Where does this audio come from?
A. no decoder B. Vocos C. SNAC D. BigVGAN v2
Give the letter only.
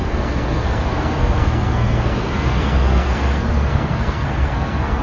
C